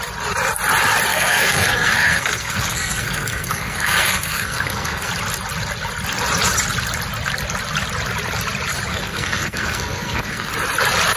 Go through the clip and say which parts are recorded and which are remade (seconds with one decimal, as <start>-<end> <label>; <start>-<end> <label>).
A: 0.0-1.1 recorded; 1.1-5.1 remade; 5.1-8.9 recorded; 8.9-10.5 remade; 10.5-11.2 recorded